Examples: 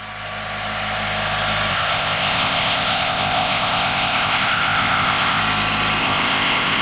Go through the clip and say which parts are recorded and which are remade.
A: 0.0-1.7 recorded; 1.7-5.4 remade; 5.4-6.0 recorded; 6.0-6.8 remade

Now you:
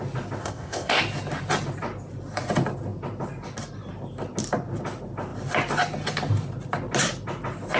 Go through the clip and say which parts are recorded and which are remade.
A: 0.0-0.4 recorded; 0.4-1.0 remade; 1.0-7.8 recorded

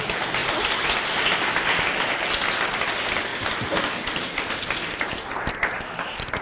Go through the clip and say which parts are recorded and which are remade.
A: 0.0-6.4 recorded